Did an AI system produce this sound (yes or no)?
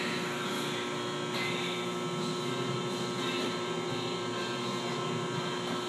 no